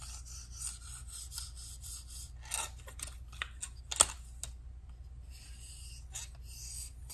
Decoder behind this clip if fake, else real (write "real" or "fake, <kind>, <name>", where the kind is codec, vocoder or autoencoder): real